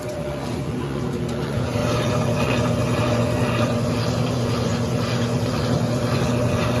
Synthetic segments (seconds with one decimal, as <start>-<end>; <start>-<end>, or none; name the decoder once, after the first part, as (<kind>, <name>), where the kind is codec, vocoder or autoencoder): 0.0-6.8 (vocoder, Vocos)

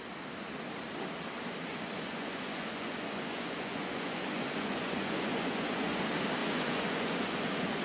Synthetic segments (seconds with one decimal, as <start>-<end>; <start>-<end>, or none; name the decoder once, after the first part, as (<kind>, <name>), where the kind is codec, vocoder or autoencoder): 1.7-6.0 (vocoder, Vocos); 6.4-7.8

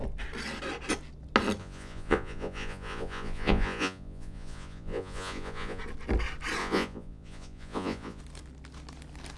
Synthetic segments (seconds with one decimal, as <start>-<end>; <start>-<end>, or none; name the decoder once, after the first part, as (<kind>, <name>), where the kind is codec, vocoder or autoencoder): 1.6-5.8 (vocoder, Vocos); 6.6-8.2

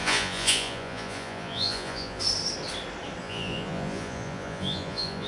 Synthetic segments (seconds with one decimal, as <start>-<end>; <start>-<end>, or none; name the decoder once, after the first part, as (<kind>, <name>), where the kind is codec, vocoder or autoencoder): 0.0-2.2 (vocoder, Vocos); 3.2-5.3

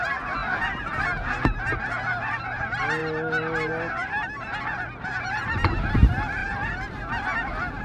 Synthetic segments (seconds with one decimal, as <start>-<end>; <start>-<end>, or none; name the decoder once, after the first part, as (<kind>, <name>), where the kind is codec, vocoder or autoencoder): none

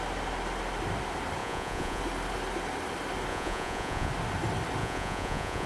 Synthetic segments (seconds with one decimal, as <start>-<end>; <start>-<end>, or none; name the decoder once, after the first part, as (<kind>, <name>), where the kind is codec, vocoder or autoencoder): 1.4-2.0 (vocoder, Vocos); 3.3-4.1; 4.8-5.7